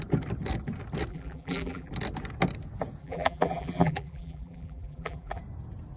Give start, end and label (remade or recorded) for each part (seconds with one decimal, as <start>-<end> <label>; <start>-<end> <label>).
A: 0.0-1.1 recorded; 1.1-1.9 remade; 1.9-3.0 recorded; 3.0-5.4 remade; 5.4-6.0 recorded